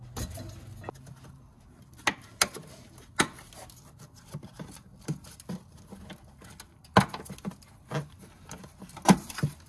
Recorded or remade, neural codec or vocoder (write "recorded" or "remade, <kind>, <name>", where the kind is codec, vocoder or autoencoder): recorded